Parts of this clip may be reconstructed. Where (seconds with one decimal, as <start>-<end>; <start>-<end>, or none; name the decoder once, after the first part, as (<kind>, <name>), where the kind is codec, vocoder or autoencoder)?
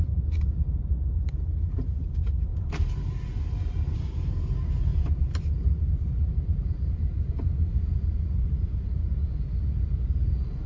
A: 0.0-4.9 (vocoder, BigVGAN v2); 6.1-10.7